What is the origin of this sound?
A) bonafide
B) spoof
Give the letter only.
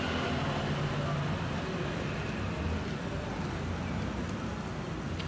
A